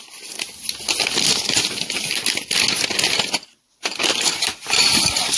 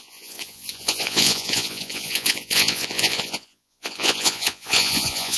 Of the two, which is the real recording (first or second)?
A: first